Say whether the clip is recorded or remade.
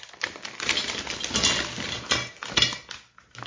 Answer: recorded